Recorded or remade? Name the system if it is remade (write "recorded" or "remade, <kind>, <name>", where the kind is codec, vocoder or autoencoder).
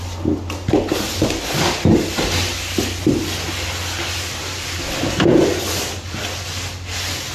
recorded